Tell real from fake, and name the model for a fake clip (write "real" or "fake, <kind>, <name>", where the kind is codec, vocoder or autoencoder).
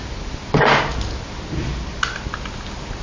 real